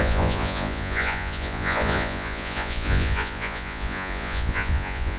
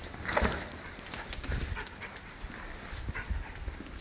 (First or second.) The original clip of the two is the second